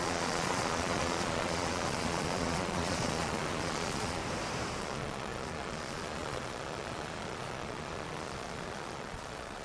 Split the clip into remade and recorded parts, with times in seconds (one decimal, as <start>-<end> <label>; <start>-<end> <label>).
0.0-4.2 remade; 4.2-4.8 recorded; 4.8-9.6 remade